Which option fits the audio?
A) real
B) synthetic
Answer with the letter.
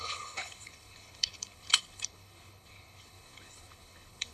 B